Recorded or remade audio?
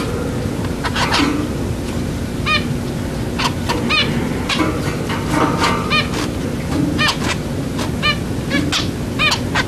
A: recorded